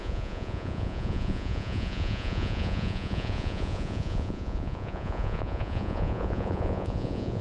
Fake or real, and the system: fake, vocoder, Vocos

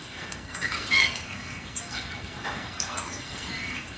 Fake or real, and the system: fake, codec, SNAC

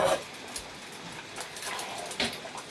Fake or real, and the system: real